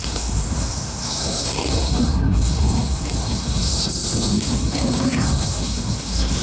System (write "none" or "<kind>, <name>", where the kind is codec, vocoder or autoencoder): codec, SNAC